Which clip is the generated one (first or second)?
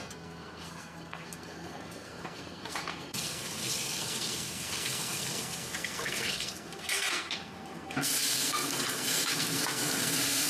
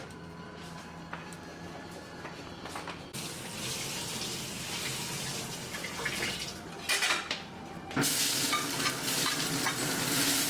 first